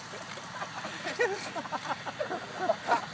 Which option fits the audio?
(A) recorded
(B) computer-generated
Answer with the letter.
A